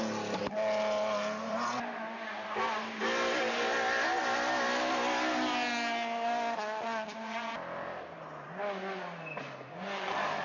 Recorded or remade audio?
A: recorded